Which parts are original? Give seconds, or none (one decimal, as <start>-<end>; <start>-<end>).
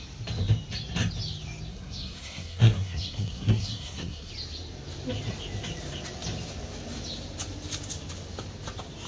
0.0-1.7; 4.3-9.1